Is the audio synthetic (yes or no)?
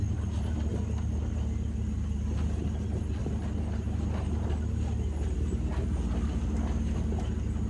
no